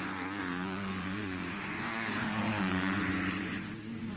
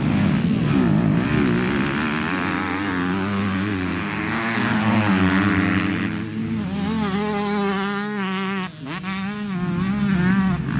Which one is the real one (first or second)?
second